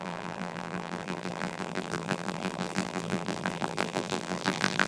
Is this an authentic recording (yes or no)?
no